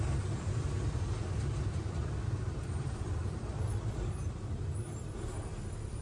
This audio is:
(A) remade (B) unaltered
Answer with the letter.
A